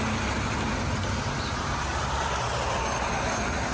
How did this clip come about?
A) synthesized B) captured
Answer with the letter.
B